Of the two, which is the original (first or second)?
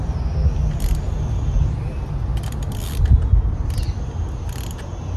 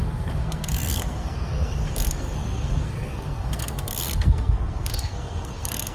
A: first